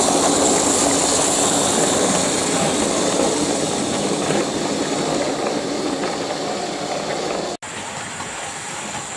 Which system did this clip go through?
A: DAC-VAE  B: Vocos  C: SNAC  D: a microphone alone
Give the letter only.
D